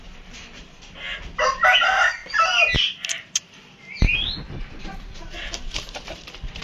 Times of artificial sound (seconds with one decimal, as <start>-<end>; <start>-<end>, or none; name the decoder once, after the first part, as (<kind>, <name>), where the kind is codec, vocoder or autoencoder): none